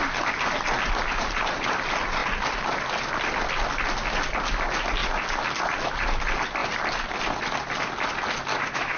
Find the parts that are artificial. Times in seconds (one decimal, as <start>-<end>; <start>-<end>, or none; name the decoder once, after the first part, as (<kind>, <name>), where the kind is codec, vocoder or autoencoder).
8.5-9.0 (autoencoder, DAC-VAE)